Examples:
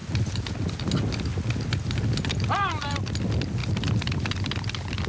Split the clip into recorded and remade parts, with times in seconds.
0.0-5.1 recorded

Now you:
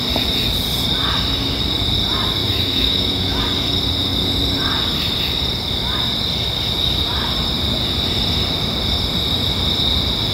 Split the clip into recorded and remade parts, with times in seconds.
0.0-2.4 recorded; 2.4-3.4 remade; 3.4-10.3 recorded

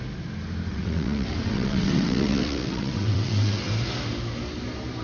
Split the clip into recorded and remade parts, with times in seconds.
0.0-0.7 recorded; 0.7-3.7 remade; 3.7-5.0 recorded